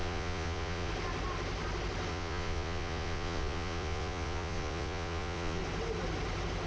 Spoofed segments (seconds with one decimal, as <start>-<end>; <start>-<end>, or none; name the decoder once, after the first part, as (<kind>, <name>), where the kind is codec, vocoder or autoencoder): 0.0-0.9 (vocoder, Vocos); 2.1-5.6